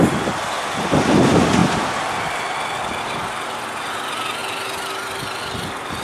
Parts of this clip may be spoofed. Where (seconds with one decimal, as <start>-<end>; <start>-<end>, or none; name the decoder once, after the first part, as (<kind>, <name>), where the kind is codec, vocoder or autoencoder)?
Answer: none